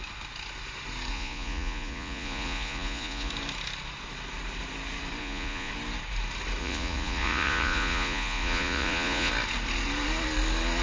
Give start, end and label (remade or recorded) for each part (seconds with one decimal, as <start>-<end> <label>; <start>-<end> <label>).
0.0-1.1 recorded; 1.1-3.3 remade; 3.3-5.2 recorded; 5.2-5.7 remade; 5.7-6.6 recorded; 6.6-9.3 remade; 9.3-10.8 recorded